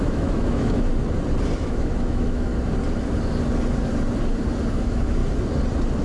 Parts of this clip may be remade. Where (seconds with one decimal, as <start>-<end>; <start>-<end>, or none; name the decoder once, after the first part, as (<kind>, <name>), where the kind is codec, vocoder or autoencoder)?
0.0-0.9 (autoencoder, DAC-VAE); 1.6-2.5; 4.7-5.2